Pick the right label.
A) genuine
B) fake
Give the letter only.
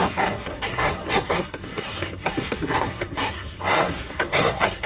B